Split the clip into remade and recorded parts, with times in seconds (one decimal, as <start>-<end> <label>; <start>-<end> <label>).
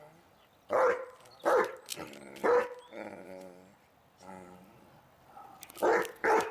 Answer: 0.0-6.5 recorded